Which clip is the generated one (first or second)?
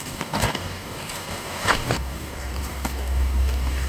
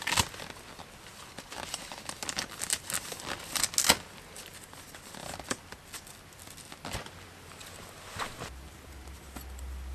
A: first